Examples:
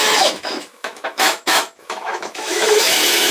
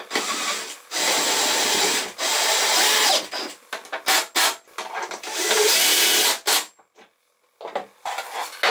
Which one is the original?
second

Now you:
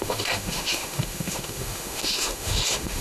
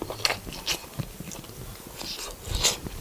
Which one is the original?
second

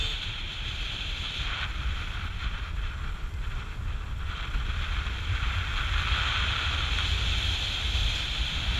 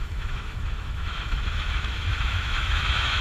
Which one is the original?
first